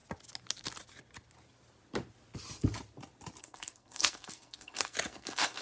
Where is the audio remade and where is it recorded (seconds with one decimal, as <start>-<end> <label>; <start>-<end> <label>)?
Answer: 0.0-3.4 recorded; 3.4-5.6 remade